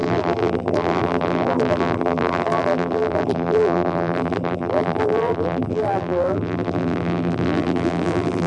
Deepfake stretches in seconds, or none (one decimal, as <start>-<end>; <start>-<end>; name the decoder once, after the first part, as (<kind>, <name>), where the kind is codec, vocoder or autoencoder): 0.0-8.5 (vocoder, BigVGAN v2)